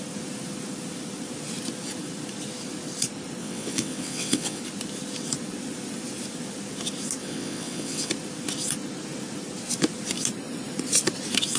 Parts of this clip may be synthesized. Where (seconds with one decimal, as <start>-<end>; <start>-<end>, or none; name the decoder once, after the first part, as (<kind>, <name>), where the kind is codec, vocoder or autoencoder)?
3.4-4.6 (vocoder, WaveNeXt); 7.2-8.1